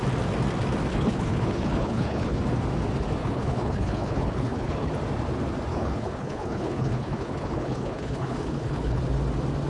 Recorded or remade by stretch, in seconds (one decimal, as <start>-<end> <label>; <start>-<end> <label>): 0.0-0.9 recorded; 0.9-2.4 remade; 2.4-3.2 recorded; 3.2-4.9 remade; 4.9-5.7 recorded; 5.7-9.0 remade; 9.0-9.7 recorded